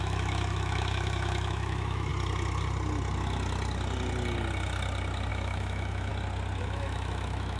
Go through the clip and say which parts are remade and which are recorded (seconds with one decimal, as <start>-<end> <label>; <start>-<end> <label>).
0.0-2.1 remade; 2.1-5.3 recorded; 5.3-6.1 remade; 6.1-6.6 recorded; 6.6-7.6 remade